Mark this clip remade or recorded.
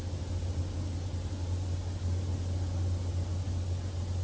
recorded